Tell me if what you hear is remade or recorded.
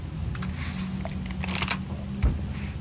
recorded